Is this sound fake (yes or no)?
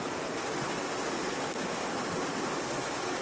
no